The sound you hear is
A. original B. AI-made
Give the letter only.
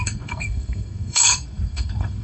B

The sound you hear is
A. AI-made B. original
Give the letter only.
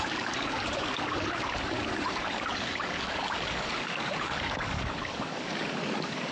A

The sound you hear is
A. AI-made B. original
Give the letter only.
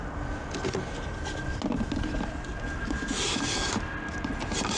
B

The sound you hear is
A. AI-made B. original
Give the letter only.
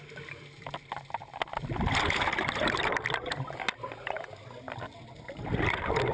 B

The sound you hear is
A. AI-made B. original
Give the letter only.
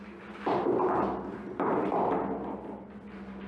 B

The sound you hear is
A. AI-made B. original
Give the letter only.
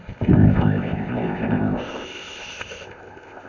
A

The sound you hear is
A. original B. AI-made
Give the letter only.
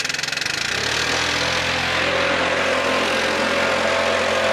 A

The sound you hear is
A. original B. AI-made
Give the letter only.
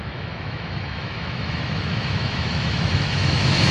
B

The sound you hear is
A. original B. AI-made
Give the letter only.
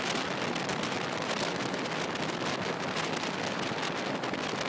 A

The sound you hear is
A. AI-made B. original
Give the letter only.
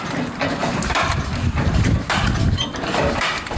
A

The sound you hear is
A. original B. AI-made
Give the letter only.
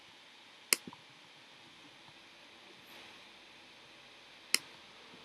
A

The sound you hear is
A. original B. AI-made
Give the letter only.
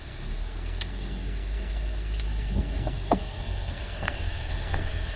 B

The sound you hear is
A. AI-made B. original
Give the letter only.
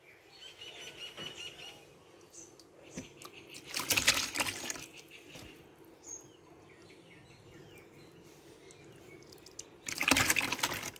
B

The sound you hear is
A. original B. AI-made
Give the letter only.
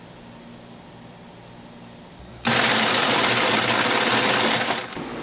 A